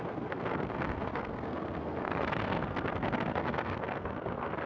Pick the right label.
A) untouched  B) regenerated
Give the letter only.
B